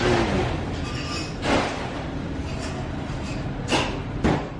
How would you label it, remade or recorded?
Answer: recorded